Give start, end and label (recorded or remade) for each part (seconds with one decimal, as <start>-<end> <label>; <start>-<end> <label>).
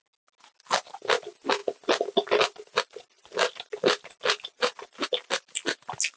0.0-6.2 recorded